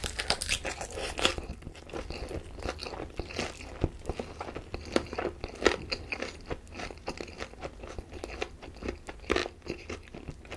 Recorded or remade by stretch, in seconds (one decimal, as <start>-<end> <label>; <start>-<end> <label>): 0.0-10.6 recorded